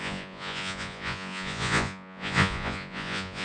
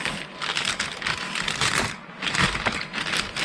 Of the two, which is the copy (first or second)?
first